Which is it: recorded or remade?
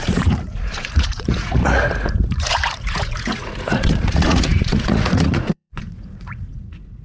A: remade